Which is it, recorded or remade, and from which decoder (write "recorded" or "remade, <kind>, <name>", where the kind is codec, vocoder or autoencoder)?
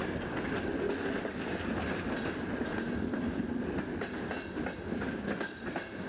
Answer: recorded